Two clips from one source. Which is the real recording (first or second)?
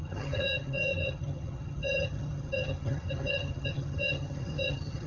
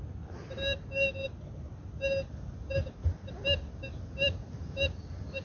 second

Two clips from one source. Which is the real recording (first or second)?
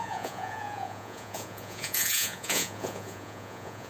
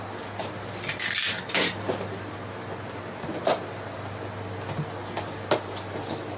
second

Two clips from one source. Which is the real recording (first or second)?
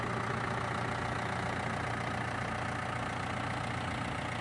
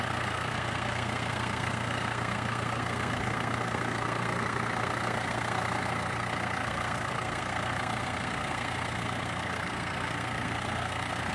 first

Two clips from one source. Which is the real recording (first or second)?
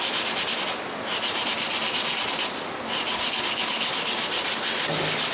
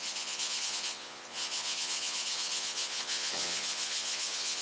first